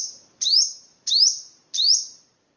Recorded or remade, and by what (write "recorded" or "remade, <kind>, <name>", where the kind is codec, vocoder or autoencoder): remade, vocoder, BigVGAN v2